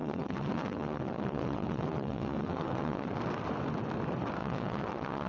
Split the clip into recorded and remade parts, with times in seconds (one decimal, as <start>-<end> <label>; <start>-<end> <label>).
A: 0.0-3.2 remade; 3.2-4.4 recorded; 4.4-5.3 remade